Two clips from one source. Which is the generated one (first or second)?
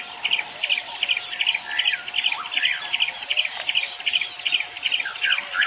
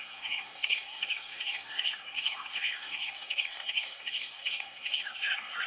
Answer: second